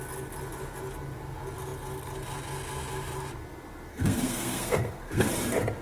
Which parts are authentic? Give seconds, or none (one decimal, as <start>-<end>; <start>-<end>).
0.0-3.9; 5.3-5.8